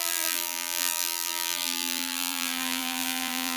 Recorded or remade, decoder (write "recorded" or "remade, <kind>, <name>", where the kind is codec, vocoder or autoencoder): remade, vocoder, BigVGAN v2